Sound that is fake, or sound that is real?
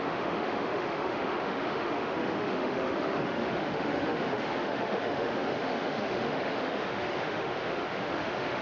fake